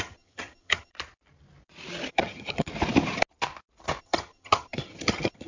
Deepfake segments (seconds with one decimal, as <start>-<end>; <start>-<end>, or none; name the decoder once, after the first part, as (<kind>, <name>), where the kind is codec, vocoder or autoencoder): 0.0-0.9 (vocoder, HiFi-GAN); 2.1-2.7; 4.0-5.5